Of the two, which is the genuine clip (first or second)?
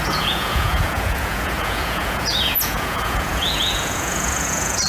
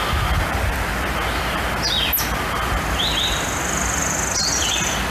second